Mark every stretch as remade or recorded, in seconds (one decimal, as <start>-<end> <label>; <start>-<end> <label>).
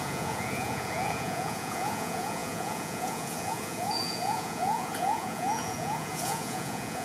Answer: 0.0-7.0 remade